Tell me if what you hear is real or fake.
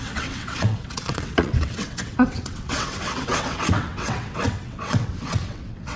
fake